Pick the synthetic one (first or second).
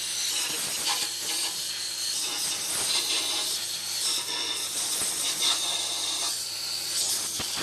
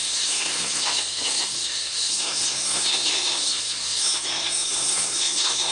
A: second